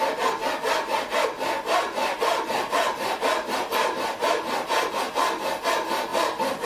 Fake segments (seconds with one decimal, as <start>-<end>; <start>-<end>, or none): 2.0-4.9